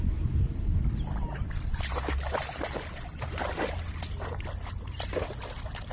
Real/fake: real